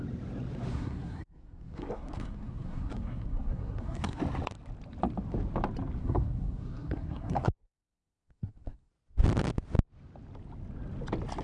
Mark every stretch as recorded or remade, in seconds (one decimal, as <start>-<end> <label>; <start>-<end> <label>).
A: 0.0-0.7 recorded; 0.7-4.2 remade; 4.2-6.0 recorded; 6.0-8.9 remade; 8.9-11.4 recorded